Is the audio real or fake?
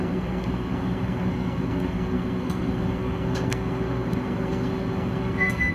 fake